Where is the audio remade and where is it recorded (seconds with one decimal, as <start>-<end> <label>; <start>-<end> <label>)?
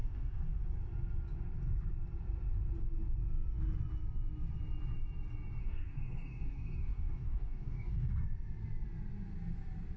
0.0-0.6 remade; 0.6-5.6 recorded; 5.6-8.1 remade; 8.1-10.0 recorded